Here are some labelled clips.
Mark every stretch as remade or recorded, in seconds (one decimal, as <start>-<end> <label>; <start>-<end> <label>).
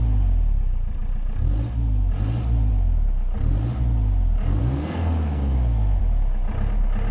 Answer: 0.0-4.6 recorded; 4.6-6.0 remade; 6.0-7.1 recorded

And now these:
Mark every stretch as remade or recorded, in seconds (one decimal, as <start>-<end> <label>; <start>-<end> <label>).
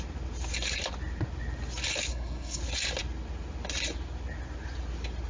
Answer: 0.0-2.1 recorded; 2.1-2.6 remade; 2.6-5.3 recorded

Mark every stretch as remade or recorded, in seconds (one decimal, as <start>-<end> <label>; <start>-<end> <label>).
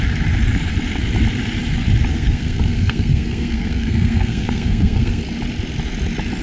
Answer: 0.0-2.1 recorded; 2.1-5.2 remade; 5.2-6.4 recorded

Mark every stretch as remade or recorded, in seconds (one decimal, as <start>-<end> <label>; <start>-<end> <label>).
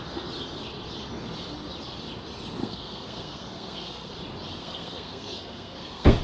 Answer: 0.0-2.6 recorded; 2.6-4.1 remade; 4.1-4.6 recorded; 4.6-6.2 remade